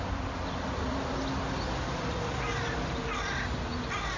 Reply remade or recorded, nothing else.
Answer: recorded